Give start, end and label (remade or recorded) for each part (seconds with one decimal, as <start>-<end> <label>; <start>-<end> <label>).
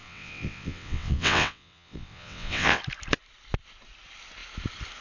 0.0-2.8 remade; 2.8-5.0 recorded